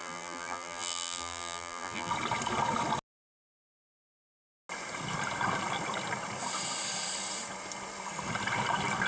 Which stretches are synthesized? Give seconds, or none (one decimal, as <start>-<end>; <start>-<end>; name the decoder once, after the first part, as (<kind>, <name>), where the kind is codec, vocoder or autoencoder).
0.0-2.1 (vocoder, BigVGAN v2)